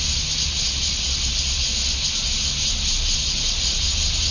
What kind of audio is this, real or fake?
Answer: real